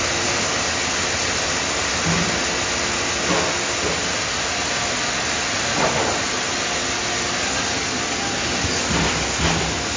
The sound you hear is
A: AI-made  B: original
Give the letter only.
B